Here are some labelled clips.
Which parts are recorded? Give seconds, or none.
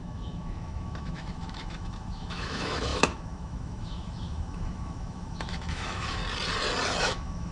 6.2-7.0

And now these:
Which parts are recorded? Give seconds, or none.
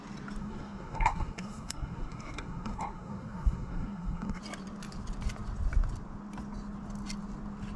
0.0-0.4; 4.4-7.8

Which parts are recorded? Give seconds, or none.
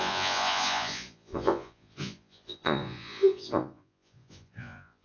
none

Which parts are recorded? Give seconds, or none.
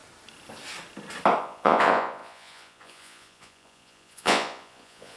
0.0-1.4